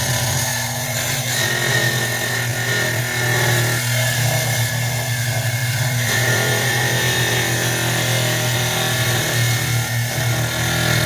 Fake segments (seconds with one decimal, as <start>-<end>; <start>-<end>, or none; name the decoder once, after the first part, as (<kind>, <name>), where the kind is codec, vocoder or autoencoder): 0.5-2.0 (vocoder, BigVGAN v2); 2.5-3.0; 5.6-6.8